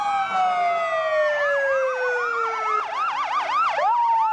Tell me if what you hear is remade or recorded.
recorded